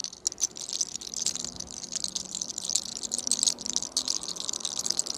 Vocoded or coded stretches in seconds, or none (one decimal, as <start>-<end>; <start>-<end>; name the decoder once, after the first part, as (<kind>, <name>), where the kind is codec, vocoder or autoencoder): none